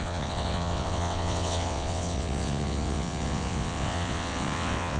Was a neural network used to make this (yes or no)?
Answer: yes